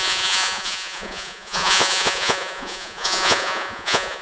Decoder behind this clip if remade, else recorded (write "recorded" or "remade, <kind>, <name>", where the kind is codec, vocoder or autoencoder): remade, vocoder, Vocos